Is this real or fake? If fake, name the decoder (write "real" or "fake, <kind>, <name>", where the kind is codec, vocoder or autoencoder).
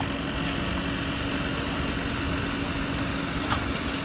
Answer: real